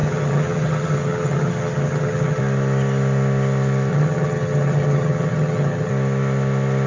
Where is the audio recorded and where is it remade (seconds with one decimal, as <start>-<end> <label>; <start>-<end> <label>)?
0.0-2.4 remade; 2.4-3.9 recorded; 3.9-5.9 remade; 5.9-6.9 recorded